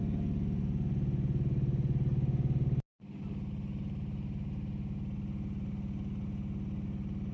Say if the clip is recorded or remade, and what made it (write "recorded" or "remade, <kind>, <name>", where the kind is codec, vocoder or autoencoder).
recorded